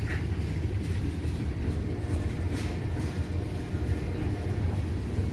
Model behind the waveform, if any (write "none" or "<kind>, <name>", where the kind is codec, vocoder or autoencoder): none